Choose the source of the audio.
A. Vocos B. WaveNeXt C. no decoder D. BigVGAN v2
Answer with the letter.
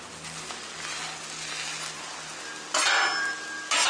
C